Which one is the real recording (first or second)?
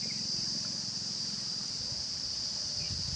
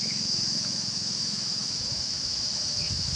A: first